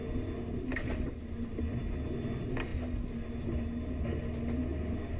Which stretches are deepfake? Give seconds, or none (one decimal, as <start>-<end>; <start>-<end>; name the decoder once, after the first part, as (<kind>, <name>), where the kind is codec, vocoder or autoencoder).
none